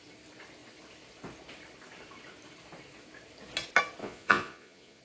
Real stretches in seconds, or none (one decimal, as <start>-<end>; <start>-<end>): 0.0-4.0